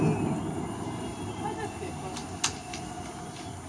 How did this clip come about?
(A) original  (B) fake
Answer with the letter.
A